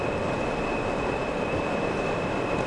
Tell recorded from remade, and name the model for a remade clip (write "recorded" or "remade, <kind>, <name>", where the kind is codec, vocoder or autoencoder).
remade, vocoder, BigVGAN v2